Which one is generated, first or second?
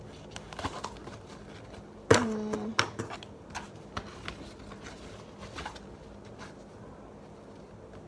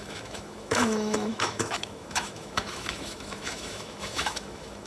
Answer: second